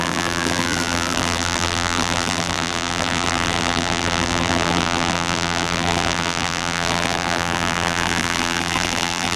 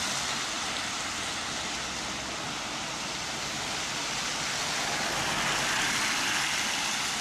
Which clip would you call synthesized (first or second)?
first